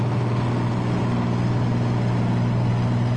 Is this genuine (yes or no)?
yes